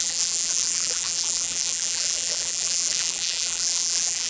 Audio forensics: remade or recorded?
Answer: remade